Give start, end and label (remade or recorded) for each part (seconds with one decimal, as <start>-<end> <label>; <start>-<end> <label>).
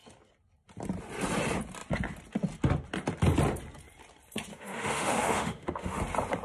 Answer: 0.0-4.5 recorded; 4.5-6.0 remade; 6.0-6.4 recorded